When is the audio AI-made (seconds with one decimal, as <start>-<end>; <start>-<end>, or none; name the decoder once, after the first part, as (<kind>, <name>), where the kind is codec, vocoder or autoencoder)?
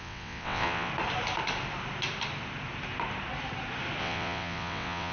0.0-0.9 (vocoder, WaveNeXt); 4.0-5.1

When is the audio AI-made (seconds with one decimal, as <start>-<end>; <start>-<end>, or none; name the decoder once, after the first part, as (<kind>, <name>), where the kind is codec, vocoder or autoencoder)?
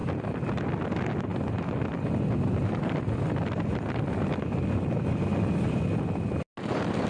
none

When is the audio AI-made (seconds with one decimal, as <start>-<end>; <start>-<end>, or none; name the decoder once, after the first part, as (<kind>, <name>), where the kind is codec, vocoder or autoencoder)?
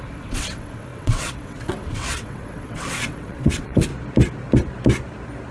0.0-3.9 (vocoder, WaveNeXt)